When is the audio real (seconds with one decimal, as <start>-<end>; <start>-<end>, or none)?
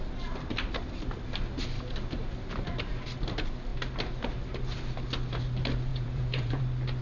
0.0-5.9; 6.6-7.0